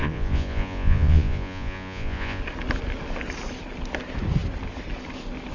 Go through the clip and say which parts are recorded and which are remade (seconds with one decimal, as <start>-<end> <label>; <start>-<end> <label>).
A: 0.0-2.4 remade; 2.4-5.5 recorded